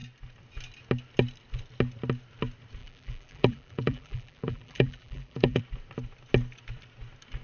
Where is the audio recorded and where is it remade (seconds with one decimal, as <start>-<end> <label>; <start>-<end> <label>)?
0.0-2.8 recorded; 2.8-5.6 remade; 5.6-7.4 recorded